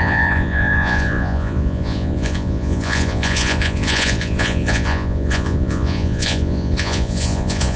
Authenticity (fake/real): fake